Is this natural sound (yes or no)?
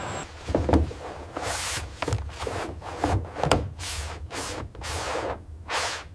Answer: yes